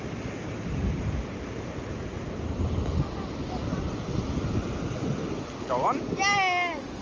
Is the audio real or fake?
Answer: real